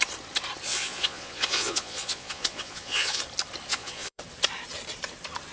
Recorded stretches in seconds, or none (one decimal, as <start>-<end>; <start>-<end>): 0.0-0.7; 3.2-3.7; 4.2-5.5